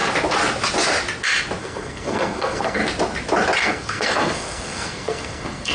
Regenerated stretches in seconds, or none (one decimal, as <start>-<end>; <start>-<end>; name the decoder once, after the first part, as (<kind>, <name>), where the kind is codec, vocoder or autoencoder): 1.6-2.8 (codec, SNAC); 3.6-5.7